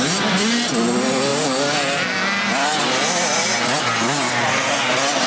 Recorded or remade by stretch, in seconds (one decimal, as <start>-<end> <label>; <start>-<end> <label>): 0.0-5.3 recorded